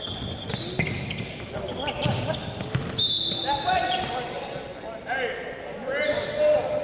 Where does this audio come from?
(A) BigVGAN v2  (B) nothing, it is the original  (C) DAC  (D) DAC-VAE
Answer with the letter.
B